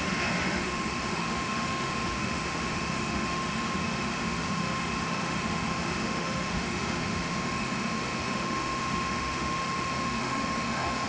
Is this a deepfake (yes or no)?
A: yes